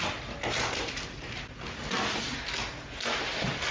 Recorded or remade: recorded